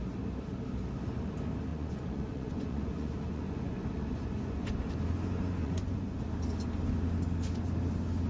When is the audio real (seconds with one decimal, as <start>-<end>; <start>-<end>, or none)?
0.0-1.7; 4.7-5.6; 6.2-8.3